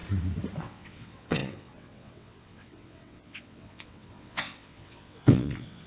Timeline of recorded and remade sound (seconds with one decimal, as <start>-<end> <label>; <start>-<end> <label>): 0.0-0.6 recorded; 0.6-5.9 remade